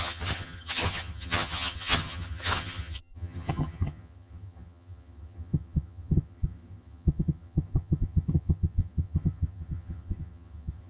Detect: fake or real fake